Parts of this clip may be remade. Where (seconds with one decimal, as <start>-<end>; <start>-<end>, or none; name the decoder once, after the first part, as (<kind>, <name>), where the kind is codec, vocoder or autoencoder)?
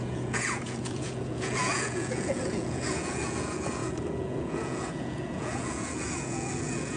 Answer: 0.0-7.0 (vocoder, Vocos)